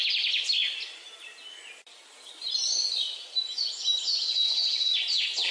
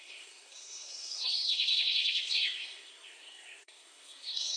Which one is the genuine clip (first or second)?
first